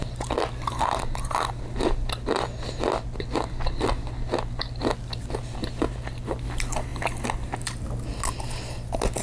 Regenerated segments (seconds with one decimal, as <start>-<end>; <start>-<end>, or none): none